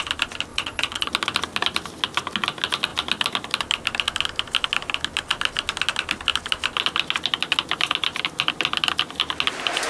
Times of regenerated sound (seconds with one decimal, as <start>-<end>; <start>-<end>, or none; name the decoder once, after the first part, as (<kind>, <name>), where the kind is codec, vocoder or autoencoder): 0.5-1.1 (vocoder, Vocos)